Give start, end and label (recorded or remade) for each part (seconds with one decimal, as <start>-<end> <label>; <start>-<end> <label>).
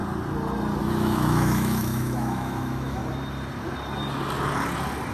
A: 0.0-0.8 recorded; 0.8-3.0 remade; 3.0-5.1 recorded